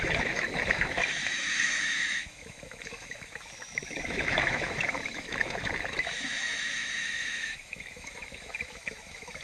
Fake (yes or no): yes